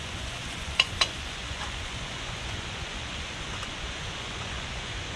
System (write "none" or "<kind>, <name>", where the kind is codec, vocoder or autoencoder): vocoder, Vocos